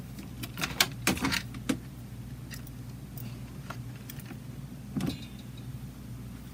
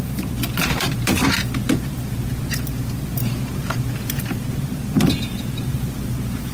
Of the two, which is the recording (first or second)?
first